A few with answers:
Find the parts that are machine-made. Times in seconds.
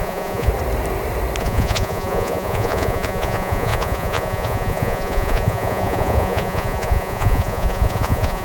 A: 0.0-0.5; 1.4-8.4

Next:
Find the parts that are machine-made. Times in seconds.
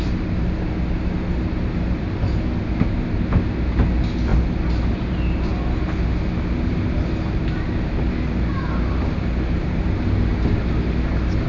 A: none